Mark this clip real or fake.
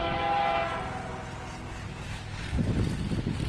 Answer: real